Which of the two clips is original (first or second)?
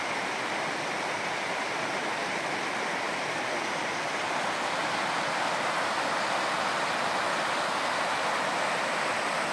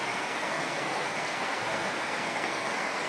first